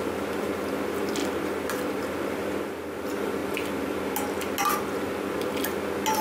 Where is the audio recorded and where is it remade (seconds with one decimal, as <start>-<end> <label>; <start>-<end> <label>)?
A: 0.0-6.2 recorded